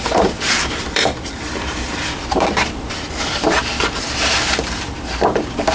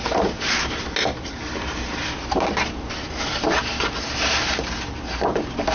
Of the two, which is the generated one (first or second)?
first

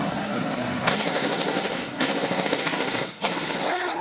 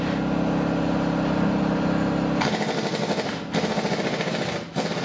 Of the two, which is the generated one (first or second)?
first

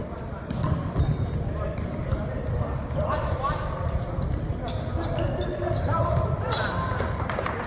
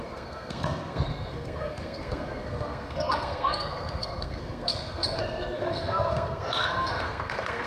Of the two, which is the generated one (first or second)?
second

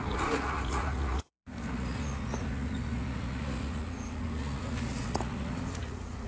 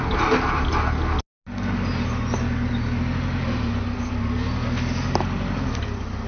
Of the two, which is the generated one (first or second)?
first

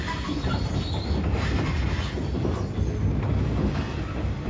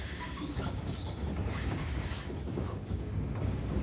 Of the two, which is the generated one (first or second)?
second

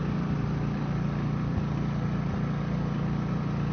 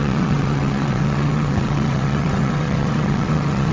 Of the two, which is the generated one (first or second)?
second